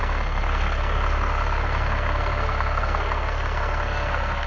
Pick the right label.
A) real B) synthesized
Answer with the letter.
B